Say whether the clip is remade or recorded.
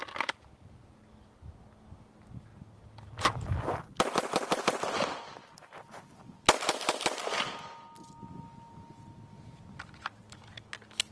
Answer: recorded